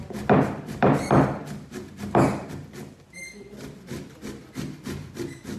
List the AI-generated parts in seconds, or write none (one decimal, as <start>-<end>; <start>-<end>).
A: 0.0-1.4; 4.8-5.6